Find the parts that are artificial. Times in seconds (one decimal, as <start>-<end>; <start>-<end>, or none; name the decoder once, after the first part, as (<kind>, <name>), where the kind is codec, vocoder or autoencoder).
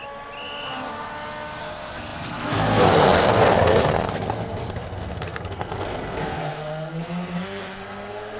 1.6-8.4 (codec, SNAC)